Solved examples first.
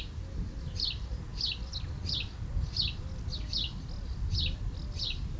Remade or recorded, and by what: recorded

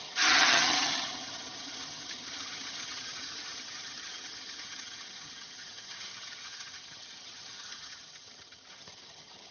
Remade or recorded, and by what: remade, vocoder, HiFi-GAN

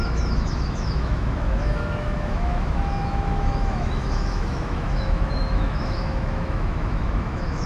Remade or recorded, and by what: remade, autoencoder, DAC-VAE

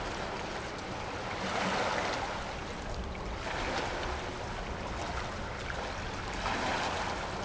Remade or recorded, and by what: recorded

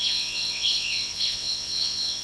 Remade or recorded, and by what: remade, vocoder, WaveNeXt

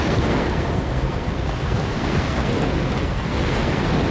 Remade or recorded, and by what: remade, codec, SNAC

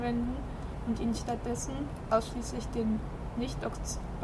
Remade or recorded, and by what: recorded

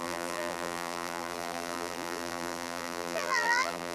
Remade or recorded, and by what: remade, vocoder, BigVGAN v2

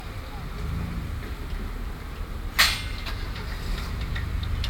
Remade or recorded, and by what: recorded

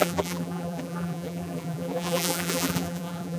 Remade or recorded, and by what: remade, vocoder, BigVGAN v2